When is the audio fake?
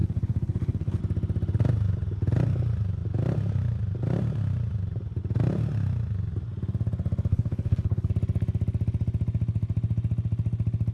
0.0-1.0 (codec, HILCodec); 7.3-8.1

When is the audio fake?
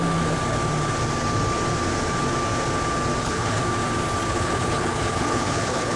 3.2-3.6 (codec, HILCodec); 4.3-6.0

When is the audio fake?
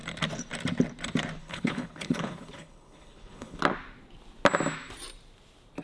1.4-3.6 (codec, HILCodec)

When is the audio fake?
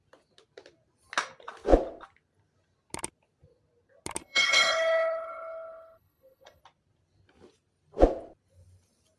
4.2-6.6 (codec, HILCodec)